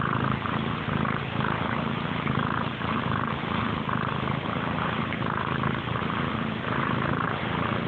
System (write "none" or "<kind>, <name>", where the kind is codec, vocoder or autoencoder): none